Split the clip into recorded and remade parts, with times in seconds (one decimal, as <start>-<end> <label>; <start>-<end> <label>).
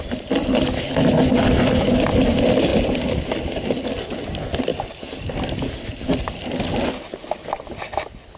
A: 0.0-8.4 recorded